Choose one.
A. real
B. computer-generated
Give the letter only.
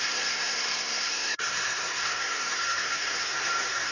B